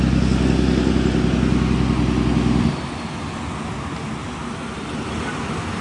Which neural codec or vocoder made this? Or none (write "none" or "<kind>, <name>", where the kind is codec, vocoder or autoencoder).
none